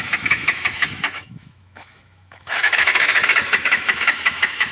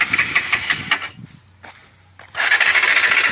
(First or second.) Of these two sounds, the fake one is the first